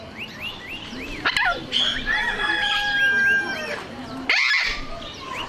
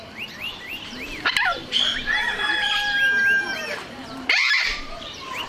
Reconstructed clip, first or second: second